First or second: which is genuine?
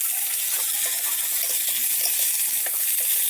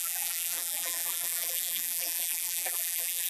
first